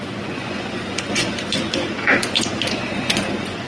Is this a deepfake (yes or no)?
yes